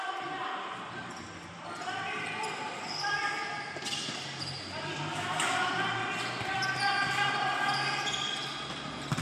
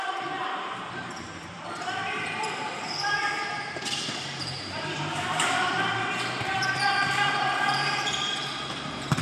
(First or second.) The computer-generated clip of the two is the second